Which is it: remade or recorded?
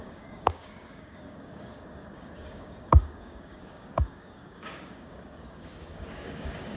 remade